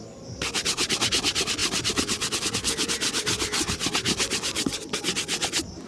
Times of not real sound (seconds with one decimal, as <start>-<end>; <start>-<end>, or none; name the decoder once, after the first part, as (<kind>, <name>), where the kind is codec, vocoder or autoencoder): none

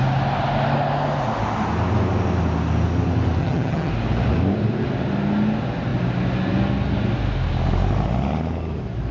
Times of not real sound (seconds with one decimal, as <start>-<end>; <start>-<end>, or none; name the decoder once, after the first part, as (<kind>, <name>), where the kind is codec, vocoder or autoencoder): 3.4-3.9 (vocoder, HiFi-GAN)